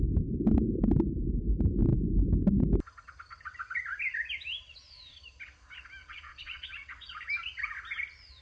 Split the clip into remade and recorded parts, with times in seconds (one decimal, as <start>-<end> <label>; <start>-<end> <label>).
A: 0.0-6.0 recorded; 6.0-7.2 remade; 7.2-8.4 recorded

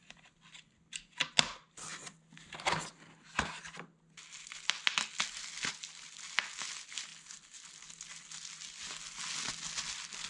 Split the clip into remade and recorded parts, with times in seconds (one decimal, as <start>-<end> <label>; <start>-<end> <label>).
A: 0.0-10.3 recorded

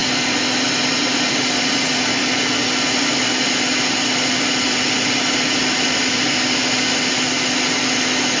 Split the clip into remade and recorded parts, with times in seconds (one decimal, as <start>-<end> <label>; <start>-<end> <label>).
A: 0.0-8.4 recorded

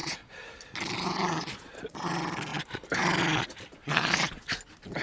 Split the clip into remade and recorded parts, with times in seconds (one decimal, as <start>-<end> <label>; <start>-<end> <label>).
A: 0.0-0.5 remade; 0.5-1.3 recorded; 1.3-2.1 remade; 2.1-3.7 recorded; 3.7-4.4 remade; 4.4-5.0 recorded

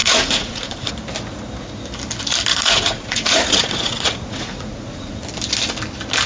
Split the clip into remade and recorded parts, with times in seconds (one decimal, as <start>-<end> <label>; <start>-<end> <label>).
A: 0.0-0.9 remade; 0.9-2.5 recorded; 2.5-5.2 remade; 5.2-6.3 recorded

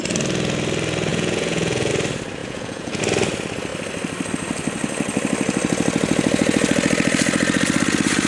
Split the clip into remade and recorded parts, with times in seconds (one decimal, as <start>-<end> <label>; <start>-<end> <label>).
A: 0.0-1.1 recorded; 1.1-1.9 remade; 1.9-2.4 recorded; 2.4-3.0 remade; 3.0-8.3 recorded

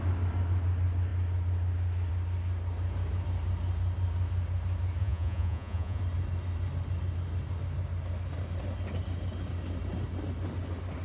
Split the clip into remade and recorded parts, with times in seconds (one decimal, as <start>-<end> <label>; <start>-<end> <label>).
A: 0.0-5.0 recorded; 5.0-6.0 remade; 6.0-11.0 recorded

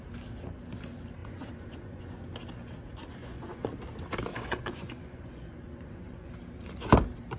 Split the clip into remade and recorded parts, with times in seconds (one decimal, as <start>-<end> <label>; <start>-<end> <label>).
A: 0.0-1.2 recorded; 1.2-2.2 remade; 2.2-3.2 recorded; 3.2-3.8 remade; 3.8-4.3 recorded; 4.3-6.3 remade; 6.3-7.4 recorded